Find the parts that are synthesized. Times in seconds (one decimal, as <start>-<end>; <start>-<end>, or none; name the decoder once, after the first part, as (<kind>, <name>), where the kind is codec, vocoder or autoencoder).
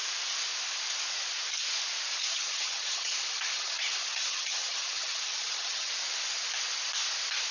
2.3-5.9 (vocoder, HiFi-GAN)